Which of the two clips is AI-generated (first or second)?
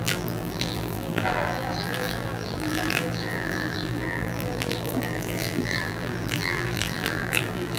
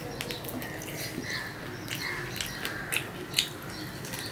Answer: first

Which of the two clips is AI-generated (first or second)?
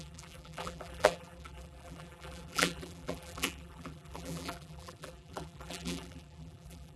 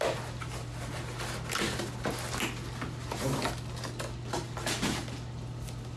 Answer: first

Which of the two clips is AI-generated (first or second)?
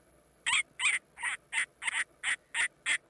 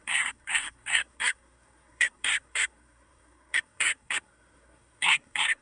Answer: second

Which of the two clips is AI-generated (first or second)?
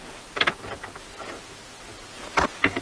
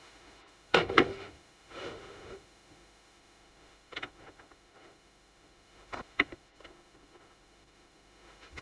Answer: second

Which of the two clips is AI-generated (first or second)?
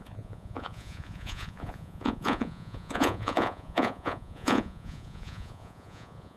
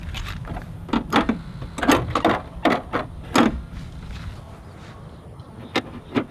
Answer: first